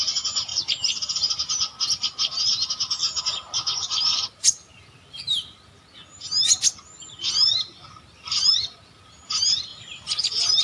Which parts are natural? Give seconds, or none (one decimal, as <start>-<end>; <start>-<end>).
0.0-4.0; 5.8-7.4; 9.2-10.6